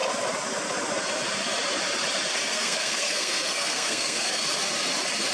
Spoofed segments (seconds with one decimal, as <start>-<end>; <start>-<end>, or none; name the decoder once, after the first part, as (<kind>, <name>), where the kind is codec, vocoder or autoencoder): 2.5-4.4 (codec, SNAC)

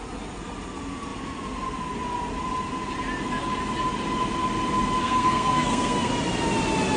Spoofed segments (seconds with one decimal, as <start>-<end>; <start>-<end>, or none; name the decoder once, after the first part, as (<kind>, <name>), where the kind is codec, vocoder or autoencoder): 5.0-6.1 (codec, SNAC)

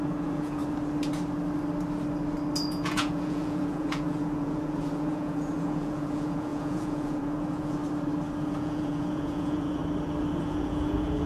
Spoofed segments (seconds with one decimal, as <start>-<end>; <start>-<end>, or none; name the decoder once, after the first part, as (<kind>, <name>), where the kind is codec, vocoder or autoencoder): 0.0-0.6 (vocoder, Vocos); 2.7-7.8; 8.4-9.8; 10.4-11.3

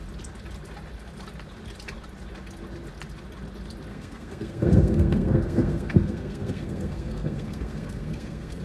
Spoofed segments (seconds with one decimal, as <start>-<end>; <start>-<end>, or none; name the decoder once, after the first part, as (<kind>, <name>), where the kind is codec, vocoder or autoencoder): 3.9-8.6 (codec, SNAC)

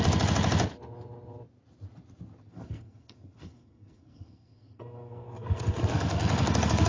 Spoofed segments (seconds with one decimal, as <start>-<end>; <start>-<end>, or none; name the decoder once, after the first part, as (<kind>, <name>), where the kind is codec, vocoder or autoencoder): 2.5-6.9 (codec, SNAC)